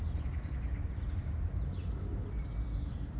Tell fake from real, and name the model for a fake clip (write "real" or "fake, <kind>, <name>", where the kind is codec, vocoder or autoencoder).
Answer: real